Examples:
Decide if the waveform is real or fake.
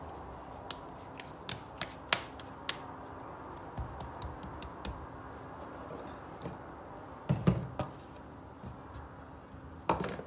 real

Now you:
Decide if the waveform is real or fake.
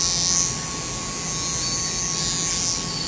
real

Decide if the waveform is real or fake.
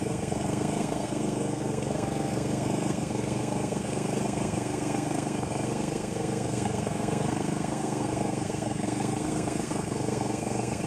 fake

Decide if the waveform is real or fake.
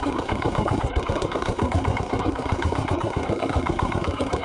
fake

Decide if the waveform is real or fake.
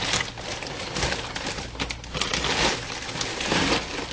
real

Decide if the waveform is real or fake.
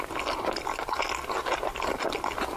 real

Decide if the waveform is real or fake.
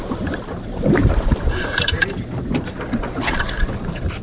fake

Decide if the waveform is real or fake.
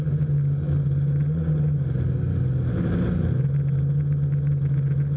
real